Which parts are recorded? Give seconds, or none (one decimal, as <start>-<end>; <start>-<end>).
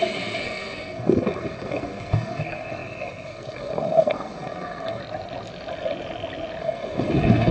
5.0-6.6